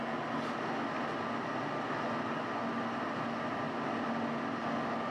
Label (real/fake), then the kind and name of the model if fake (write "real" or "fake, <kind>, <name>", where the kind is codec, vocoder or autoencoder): real